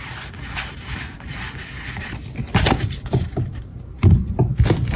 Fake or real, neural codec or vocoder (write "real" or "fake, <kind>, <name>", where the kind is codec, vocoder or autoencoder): real